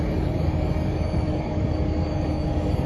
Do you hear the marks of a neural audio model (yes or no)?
yes